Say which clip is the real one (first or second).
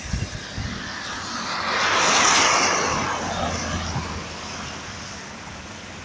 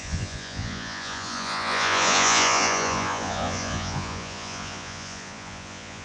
first